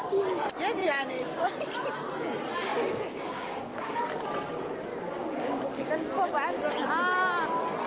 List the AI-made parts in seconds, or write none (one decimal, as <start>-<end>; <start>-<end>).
0.8-1.5; 2.7-4.0; 4.9-5.9